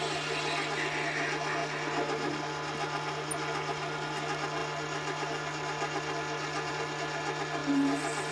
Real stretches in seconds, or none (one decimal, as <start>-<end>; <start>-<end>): 0.0-8.3